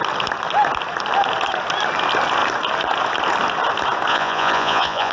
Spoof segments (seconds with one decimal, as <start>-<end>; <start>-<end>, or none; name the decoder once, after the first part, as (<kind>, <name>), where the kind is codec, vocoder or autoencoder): 4.1-5.1 (vocoder, Vocos)